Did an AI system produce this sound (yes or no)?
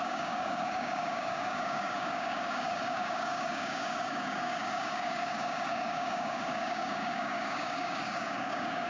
yes